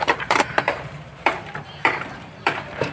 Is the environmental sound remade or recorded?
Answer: remade